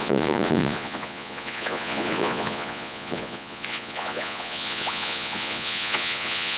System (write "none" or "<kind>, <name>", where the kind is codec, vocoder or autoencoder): vocoder, Vocos